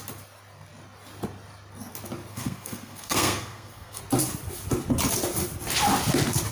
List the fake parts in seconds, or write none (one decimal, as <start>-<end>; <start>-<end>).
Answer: 2.3-4.0